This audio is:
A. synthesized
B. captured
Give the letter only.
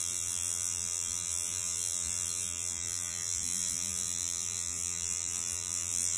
A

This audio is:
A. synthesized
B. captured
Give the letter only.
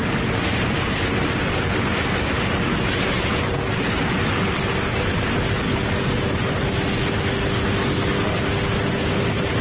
B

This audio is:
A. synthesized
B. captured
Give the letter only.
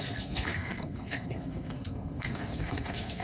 A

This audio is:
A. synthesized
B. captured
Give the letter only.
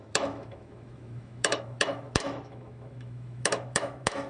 A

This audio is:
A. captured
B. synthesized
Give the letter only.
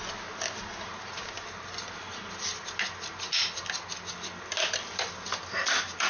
A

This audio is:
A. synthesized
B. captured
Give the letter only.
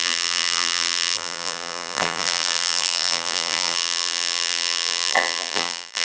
A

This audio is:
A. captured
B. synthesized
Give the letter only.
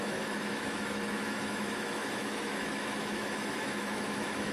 B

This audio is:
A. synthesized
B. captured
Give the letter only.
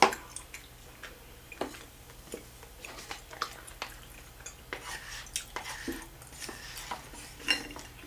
B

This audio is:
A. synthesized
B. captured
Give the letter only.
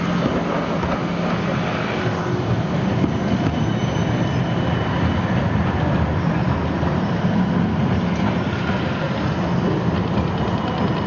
B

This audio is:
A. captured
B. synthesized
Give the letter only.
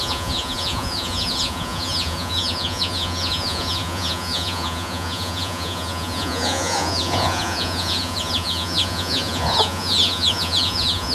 B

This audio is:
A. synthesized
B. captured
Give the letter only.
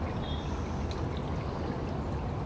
B